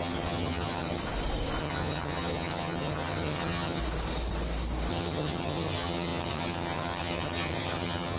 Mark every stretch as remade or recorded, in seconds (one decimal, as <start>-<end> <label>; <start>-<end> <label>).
0.0-1.0 remade; 1.0-1.6 recorded; 1.6-3.8 remade; 3.8-4.9 recorded; 4.9-8.2 remade